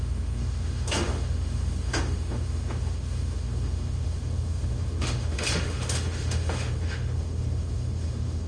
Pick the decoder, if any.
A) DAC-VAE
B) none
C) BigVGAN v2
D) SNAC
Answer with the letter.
A